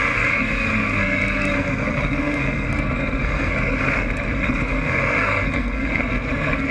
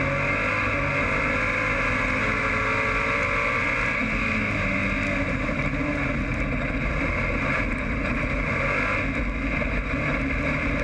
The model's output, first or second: first